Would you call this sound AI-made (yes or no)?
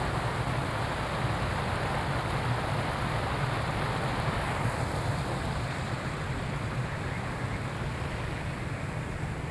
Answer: no